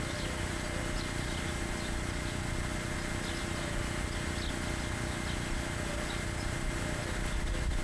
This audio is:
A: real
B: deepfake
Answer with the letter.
A